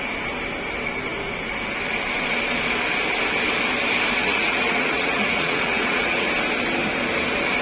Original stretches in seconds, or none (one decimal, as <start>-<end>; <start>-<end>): 0.0-4.2; 6.3-7.6